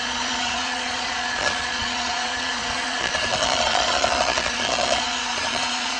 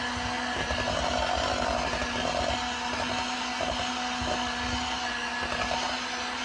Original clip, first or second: second